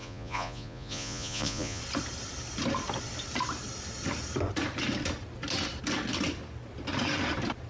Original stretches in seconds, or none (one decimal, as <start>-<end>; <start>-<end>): 1.8-7.7